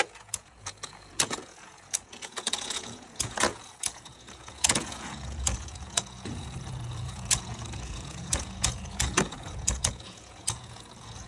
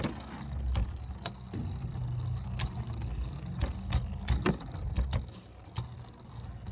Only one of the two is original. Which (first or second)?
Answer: second